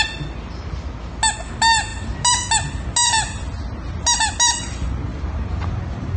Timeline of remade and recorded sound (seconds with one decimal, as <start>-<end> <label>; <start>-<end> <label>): 0.0-6.2 recorded